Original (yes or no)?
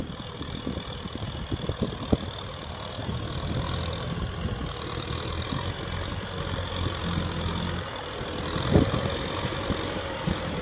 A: yes